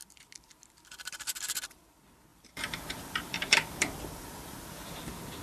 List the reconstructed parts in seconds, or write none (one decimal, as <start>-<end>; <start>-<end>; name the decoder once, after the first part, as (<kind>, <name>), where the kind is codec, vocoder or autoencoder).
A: 2.3-5.0 (vocoder, BigVGAN v2)